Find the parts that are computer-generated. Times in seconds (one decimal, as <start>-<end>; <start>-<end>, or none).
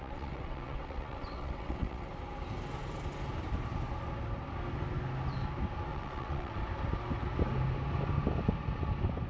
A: 0.0-2.1; 5.9-6.6